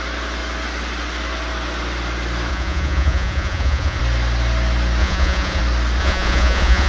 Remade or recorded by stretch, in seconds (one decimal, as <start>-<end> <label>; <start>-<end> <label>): 0.0-2.5 recorded; 2.5-4.0 remade; 4.0-5.0 recorded; 5.0-5.6 remade; 5.6-6.0 recorded; 6.0-6.9 remade